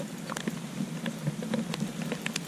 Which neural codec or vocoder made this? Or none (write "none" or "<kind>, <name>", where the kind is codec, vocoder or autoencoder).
none